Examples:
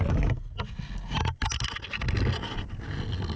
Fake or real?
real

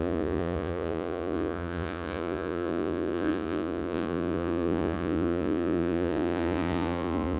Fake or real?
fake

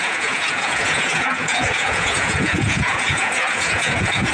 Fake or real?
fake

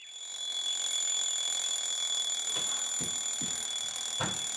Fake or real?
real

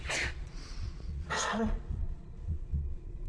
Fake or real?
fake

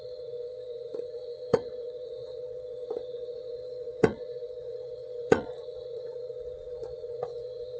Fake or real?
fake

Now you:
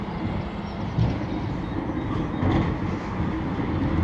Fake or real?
real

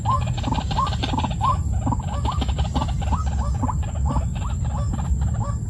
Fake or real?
real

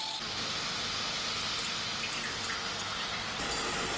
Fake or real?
real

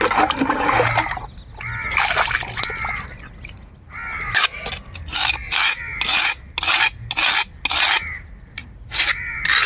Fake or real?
real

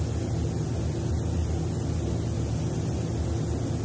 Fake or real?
real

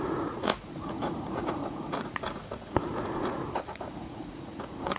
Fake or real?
fake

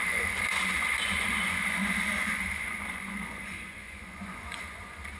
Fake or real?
fake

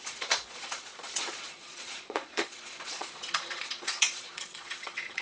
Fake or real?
fake